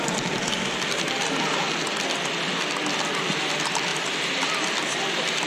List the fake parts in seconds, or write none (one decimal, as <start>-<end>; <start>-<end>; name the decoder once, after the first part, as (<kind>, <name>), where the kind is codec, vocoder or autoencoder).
3.9-4.5 (vocoder, BigVGAN v2)